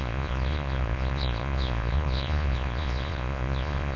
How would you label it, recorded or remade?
remade